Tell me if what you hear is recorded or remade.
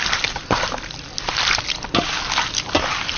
recorded